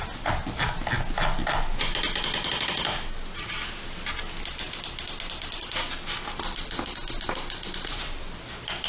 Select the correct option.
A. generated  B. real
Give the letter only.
B